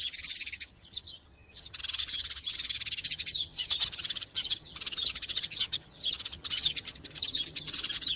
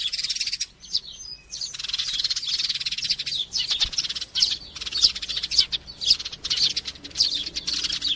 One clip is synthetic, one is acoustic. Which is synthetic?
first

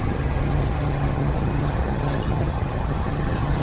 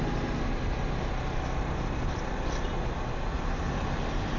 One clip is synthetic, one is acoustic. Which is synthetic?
first